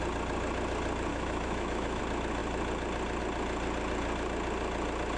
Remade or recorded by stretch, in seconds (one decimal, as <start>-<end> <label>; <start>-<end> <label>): 0.0-1.1 recorded; 1.1-2.0 remade; 2.0-5.2 recorded